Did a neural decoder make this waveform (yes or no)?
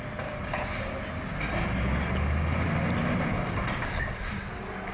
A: no